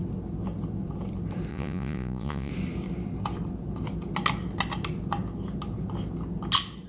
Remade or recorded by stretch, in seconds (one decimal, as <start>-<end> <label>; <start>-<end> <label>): 0.0-1.5 recorded; 1.5-2.5 remade; 2.5-6.9 recorded